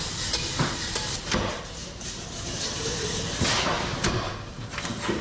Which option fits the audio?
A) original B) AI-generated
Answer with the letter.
B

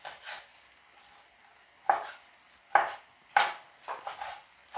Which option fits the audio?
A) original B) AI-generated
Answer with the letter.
A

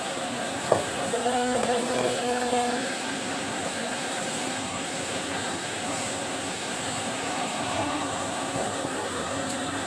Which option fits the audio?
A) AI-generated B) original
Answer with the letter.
A